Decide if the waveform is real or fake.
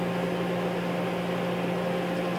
real